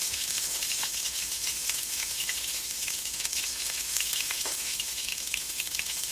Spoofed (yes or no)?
yes